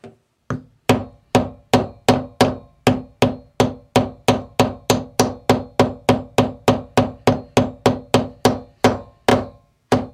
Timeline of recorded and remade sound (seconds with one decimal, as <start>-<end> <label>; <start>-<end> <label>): 0.0-9.3 recorded; 9.3-10.1 remade